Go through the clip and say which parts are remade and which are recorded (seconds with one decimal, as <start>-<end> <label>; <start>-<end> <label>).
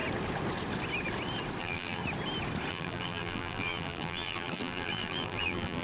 0.0-1.6 recorded; 1.6-2.0 remade; 2.0-2.7 recorded; 2.7-5.8 remade